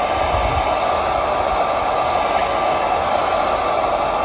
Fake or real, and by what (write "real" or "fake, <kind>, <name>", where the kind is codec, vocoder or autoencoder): real